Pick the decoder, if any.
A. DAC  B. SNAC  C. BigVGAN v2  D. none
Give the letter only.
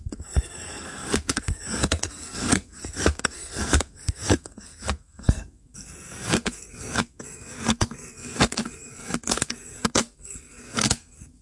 B